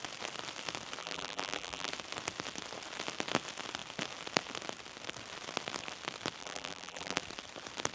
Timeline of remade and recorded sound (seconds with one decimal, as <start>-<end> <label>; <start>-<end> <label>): 0.0-1.0 recorded; 1.0-1.9 remade; 1.9-6.4 recorded; 6.4-7.2 remade; 7.2-7.9 recorded